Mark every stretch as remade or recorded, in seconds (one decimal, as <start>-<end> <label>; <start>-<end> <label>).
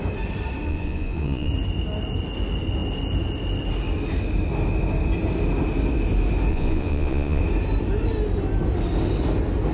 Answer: 0.0-0.7 recorded; 0.7-1.5 remade; 1.5-6.5 recorded; 6.5-7.4 remade; 7.4-9.7 recorded